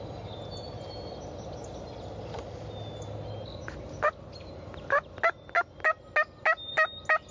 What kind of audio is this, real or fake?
real